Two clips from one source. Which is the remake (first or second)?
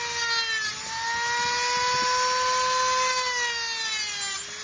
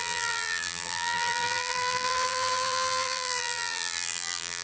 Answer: second